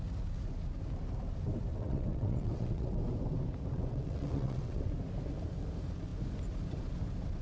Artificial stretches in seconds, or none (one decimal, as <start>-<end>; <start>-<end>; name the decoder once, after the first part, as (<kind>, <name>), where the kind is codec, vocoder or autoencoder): 1.7-3.0 (vocoder, WaveNeXt); 3.7-4.9